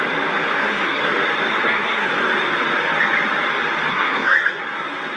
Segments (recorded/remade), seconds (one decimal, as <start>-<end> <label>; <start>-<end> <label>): 0.0-0.6 recorded; 0.6-1.1 remade; 1.1-1.5 recorded; 1.5-2.1 remade; 2.1-3.9 recorded; 3.9-4.6 remade; 4.6-5.2 recorded